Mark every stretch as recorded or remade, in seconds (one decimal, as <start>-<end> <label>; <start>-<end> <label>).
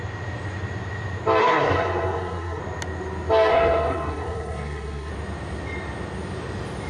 0.0-1.4 recorded; 1.4-2.6 remade; 2.6-3.5 recorded; 3.5-5.1 remade; 5.1-6.9 recorded